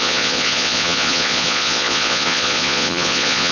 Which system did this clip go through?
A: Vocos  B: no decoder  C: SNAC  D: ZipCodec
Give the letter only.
A